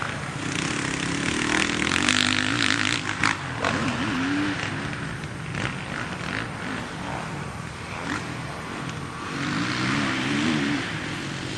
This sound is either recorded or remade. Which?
recorded